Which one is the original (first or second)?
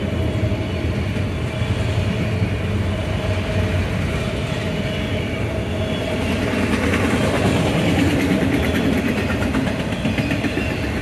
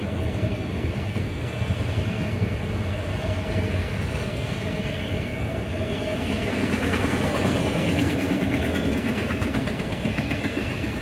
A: first